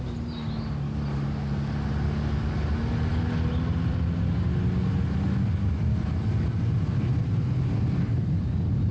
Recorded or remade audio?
recorded